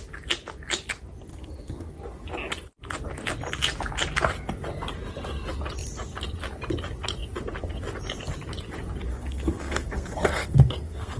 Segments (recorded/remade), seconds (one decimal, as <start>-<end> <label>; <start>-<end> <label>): 0.0-1.3 recorded; 1.3-1.9 remade; 1.9-9.1 recorded; 9.1-11.2 remade